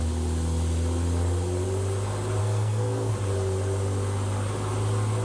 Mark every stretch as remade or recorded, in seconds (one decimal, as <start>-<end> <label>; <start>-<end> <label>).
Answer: 0.0-2.4 recorded; 2.4-3.1 remade; 3.1-5.2 recorded